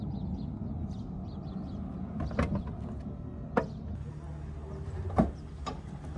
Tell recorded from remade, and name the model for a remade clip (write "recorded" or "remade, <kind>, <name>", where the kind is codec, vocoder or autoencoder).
recorded